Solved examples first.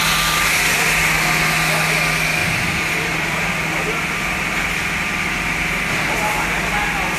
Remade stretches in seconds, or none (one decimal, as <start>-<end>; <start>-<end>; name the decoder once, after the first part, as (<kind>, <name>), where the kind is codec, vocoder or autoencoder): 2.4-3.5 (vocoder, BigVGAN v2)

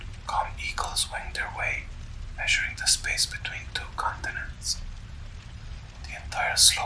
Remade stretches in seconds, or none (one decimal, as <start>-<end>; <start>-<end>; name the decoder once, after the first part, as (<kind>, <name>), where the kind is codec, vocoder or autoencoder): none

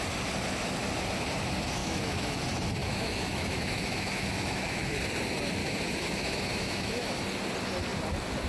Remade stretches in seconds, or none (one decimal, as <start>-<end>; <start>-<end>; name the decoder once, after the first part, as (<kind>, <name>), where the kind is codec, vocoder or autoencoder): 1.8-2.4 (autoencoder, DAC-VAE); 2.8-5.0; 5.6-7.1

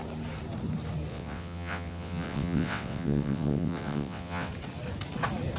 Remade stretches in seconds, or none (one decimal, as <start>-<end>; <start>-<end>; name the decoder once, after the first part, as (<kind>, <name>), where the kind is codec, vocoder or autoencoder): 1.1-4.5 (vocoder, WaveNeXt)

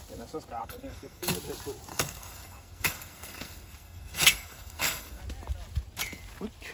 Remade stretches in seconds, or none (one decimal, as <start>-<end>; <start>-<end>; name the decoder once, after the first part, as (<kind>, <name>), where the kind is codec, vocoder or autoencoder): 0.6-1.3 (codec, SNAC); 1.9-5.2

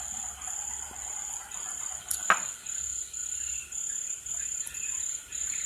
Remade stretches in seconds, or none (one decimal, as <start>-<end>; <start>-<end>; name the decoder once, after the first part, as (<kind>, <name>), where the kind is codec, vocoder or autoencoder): none

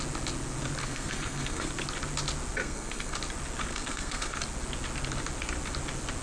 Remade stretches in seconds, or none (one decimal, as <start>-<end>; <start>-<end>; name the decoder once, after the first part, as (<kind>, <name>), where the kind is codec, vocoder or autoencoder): 0.8-1.7 (codec, SNAC); 2.6-3.2; 3.7-4.4